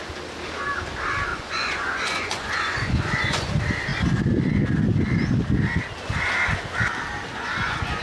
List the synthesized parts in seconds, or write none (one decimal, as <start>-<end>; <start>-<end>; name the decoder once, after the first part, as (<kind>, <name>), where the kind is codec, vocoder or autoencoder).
1.3-3.5 (vocoder, Vocos); 7.3-8.0